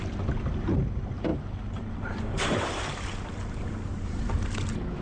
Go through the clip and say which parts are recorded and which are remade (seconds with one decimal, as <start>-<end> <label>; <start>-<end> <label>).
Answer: 0.0-1.3 recorded; 1.3-2.8 remade; 2.8-3.9 recorded; 3.9-4.5 remade; 4.5-5.0 recorded